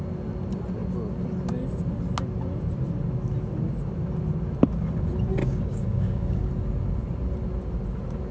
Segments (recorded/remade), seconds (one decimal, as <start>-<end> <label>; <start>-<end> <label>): 0.0-5.4 recorded; 5.4-6.4 remade; 6.4-8.3 recorded